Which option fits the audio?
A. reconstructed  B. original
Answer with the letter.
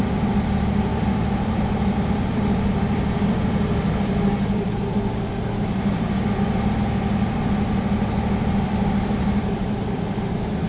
A